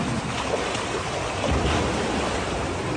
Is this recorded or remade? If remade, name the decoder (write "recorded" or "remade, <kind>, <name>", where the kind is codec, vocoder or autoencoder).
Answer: recorded